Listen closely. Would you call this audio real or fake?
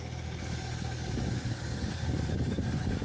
fake